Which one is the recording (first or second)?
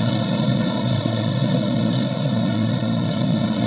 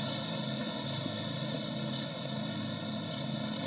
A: second